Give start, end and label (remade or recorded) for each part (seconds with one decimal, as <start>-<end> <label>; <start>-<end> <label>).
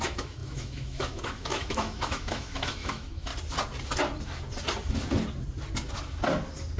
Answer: 0.0-3.3 remade; 3.3-6.8 recorded